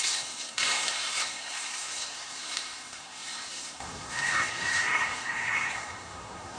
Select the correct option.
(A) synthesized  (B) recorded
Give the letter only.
A